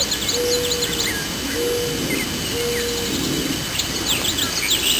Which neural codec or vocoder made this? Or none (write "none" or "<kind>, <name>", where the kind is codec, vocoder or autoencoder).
none